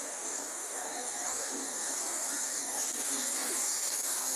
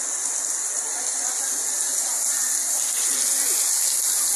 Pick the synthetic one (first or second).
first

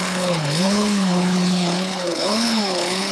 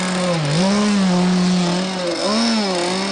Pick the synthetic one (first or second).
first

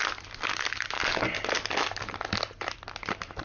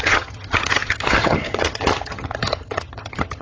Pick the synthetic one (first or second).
second